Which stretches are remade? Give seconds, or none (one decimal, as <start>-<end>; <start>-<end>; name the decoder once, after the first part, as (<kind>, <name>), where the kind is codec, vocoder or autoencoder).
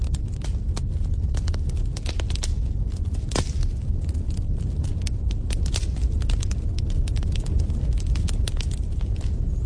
none